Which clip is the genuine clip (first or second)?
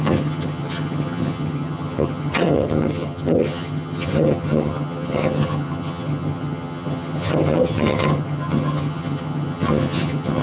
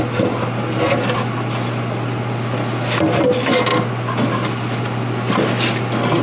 second